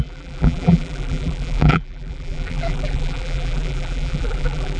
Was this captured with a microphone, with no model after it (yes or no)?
no